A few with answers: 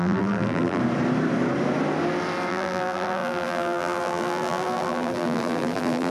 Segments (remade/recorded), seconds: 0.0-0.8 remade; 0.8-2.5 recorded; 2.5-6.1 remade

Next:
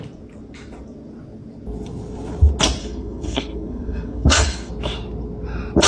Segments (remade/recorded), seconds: 0.0-2.8 recorded; 2.8-4.7 remade; 4.7-5.9 recorded